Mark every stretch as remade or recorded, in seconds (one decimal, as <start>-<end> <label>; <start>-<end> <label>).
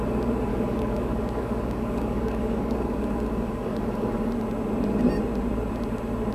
0.0-0.5 recorded; 0.5-4.3 remade; 4.3-6.3 recorded